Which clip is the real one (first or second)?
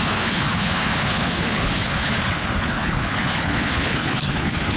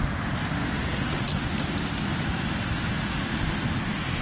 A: second